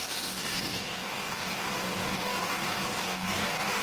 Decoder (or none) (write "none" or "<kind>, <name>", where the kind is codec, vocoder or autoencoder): codec, DAC